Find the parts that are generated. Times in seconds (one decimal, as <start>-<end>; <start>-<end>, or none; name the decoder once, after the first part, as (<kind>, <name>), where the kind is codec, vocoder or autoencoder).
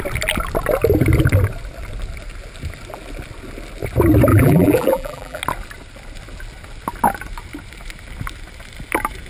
4.3-5.4 (vocoder, BigVGAN v2)